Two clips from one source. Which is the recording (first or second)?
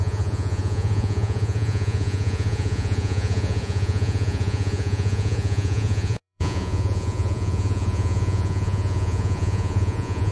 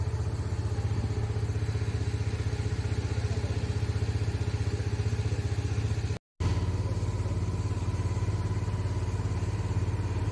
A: second